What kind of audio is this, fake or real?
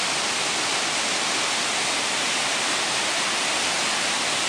real